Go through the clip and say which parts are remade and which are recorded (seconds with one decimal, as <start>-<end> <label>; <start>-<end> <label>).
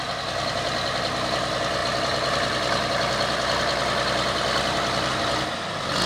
0.0-6.1 recorded